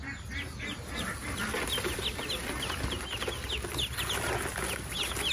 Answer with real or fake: real